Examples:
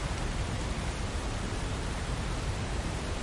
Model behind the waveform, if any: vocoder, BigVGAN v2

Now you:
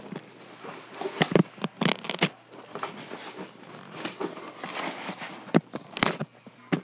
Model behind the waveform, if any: none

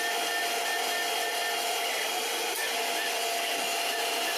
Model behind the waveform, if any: none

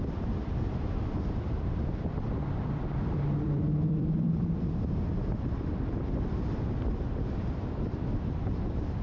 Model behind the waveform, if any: vocoder, BigVGAN v2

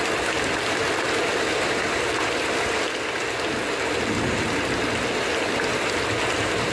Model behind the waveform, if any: none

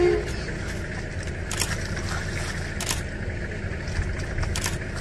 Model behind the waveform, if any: none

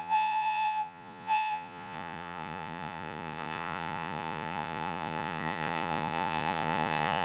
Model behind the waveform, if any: vocoder, Vocos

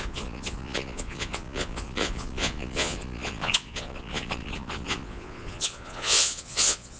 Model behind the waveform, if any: vocoder, Vocos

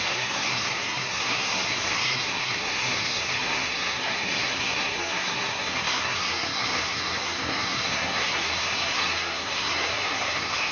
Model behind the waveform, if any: codec, SNAC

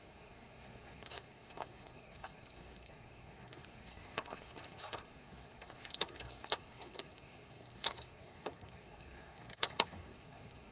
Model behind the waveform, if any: codec, SNAC